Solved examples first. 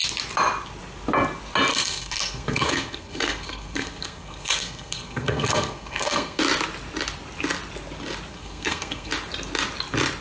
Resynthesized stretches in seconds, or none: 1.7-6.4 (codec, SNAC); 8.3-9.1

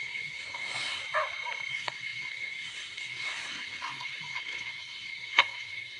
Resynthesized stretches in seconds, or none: 0.0-1.0 (codec, SNAC); 1.7-6.0

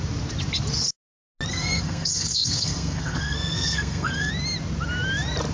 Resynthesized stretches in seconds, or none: 1.5-4.3 (codec, SNAC)